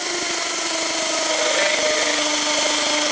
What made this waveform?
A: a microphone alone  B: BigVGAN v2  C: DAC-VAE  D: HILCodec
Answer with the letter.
A